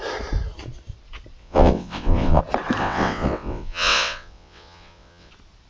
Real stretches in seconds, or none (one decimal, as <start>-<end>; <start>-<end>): 0.0-1.4; 2.4-2.8; 5.3-5.7